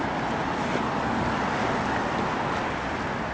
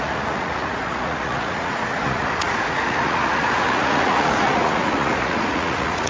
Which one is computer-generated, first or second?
second